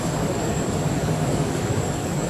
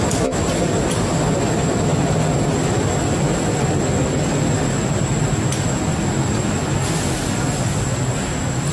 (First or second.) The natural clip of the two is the second